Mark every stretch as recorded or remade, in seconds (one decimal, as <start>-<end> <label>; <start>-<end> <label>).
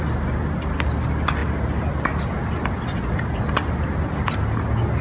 0.0-5.0 recorded